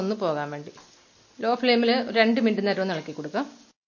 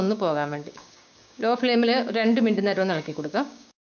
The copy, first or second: second